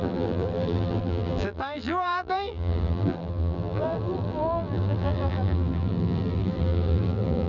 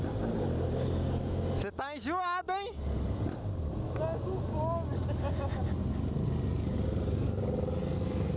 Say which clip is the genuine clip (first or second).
second